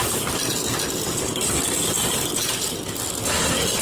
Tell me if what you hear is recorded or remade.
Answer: recorded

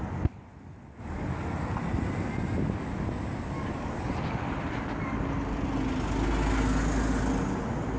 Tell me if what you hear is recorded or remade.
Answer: recorded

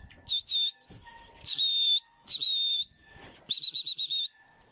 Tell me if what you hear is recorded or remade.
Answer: recorded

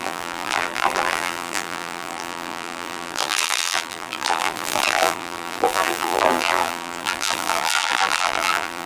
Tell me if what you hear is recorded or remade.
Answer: remade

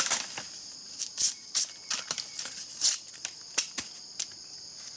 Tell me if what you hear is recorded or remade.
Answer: recorded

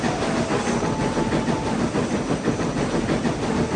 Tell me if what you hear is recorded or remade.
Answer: recorded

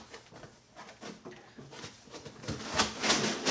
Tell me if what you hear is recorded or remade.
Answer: recorded